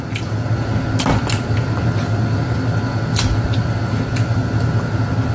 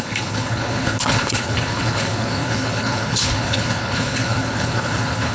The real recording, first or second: first